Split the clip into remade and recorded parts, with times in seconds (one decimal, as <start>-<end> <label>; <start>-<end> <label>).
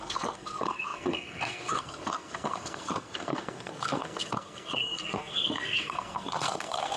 0.0-7.0 remade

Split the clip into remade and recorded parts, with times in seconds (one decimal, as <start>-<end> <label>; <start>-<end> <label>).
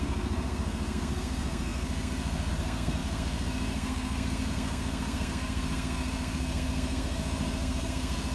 0.0-8.3 remade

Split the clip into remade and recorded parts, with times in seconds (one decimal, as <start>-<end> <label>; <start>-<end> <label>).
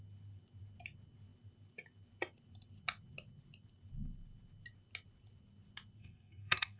0.0-6.0 recorded; 6.0-6.8 remade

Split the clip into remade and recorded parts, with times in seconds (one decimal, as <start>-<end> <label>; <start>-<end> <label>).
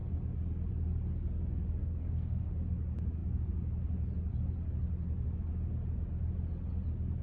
0.0-1.8 recorded; 1.8-2.5 remade; 2.5-7.2 recorded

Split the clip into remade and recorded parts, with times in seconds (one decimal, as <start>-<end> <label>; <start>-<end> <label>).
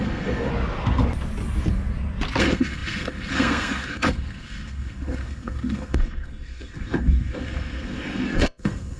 0.0-0.5 remade; 0.5-2.4 recorded; 2.4-9.0 remade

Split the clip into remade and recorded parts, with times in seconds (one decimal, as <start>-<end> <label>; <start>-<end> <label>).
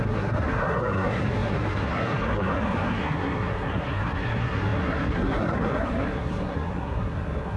0.0-7.6 remade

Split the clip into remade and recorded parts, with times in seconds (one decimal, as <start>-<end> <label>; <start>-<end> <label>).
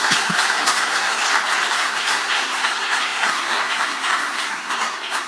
0.0-1.2 remade; 1.2-1.7 recorded; 1.7-5.3 remade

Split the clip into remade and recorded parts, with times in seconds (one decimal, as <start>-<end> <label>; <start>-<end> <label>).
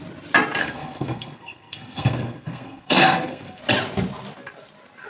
0.0-0.6 recorded; 0.6-3.6 remade; 3.6-5.1 recorded